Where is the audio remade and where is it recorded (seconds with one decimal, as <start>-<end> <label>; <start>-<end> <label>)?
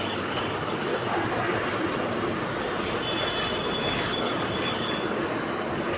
0.0-0.9 remade; 0.9-3.9 recorded; 3.9-6.0 remade